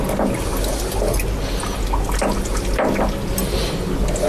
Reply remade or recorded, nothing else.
recorded